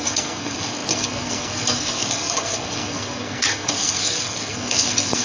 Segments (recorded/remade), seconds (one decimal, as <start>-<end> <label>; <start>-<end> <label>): 0.0-5.2 remade